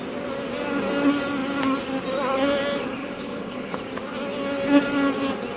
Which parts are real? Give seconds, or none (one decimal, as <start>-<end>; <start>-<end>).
0.0-3.0; 3.8-5.6